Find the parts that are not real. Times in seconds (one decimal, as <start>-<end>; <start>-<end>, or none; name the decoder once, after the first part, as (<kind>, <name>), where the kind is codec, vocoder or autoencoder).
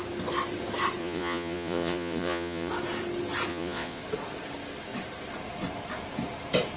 1.0-2.7 (vocoder, Vocos); 3.5-4.0